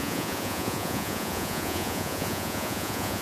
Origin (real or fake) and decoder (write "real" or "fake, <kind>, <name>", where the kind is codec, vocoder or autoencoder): fake, vocoder, Vocos